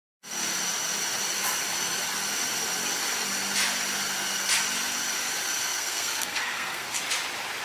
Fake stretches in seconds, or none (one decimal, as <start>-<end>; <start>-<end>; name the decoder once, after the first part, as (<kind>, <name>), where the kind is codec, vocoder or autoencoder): 5.7-7.0 (codec, SNAC)